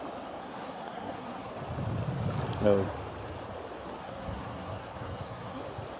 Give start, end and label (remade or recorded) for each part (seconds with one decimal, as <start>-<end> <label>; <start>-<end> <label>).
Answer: 0.0-0.4 recorded; 0.4-1.5 remade; 1.5-4.0 recorded; 4.0-5.6 remade; 5.6-6.0 recorded